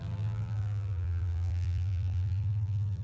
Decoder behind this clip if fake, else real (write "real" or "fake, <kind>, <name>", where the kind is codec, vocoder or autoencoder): fake, vocoder, BigVGAN v2